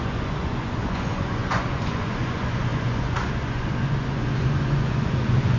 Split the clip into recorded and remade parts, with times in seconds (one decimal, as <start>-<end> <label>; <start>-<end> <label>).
0.0-5.6 remade